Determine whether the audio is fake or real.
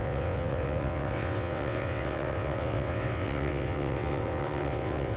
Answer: fake